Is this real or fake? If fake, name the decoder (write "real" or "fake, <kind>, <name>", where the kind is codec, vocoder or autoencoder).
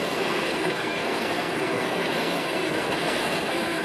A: fake, codec, SNAC